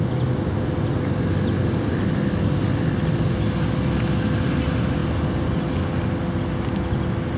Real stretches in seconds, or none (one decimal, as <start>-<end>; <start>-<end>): 0.0-7.4